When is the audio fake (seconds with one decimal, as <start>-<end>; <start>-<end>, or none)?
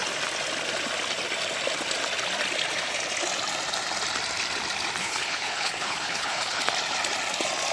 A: 5.0-6.6